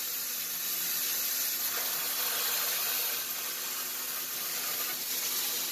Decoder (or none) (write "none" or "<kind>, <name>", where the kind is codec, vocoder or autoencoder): none